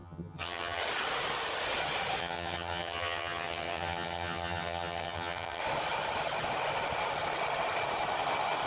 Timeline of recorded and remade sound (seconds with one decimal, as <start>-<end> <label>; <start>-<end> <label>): 0.0-0.8 remade; 0.8-2.2 recorded; 2.2-5.6 remade; 5.6-8.7 recorded